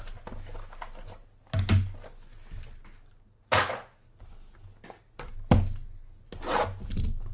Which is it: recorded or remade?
recorded